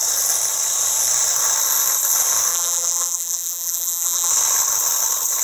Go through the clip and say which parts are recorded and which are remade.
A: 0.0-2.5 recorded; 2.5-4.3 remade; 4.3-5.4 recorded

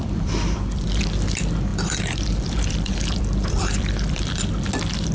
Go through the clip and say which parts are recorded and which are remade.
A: 0.0-1.0 remade; 1.0-1.7 recorded; 1.7-4.5 remade; 4.5-5.1 recorded

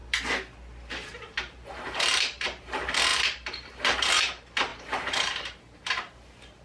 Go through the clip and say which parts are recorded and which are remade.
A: 0.0-0.9 recorded; 0.9-6.6 remade

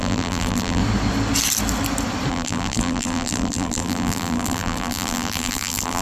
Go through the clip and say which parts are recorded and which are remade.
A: 0.0-0.8 remade; 0.8-2.3 recorded; 2.3-6.0 remade

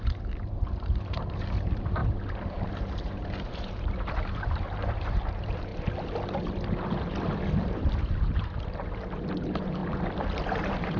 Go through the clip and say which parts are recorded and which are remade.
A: 0.0-5.7 remade; 5.7-7.7 recorded; 7.7-9.8 remade; 9.8-10.6 recorded; 10.6-11.0 remade

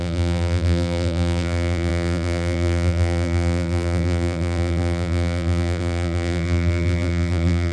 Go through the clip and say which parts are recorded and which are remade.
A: 0.0-7.7 remade

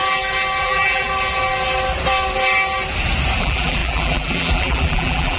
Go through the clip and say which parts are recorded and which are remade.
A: 0.0-0.6 recorded; 0.6-1.1 remade; 1.1-3.4 recorded; 3.4-5.4 remade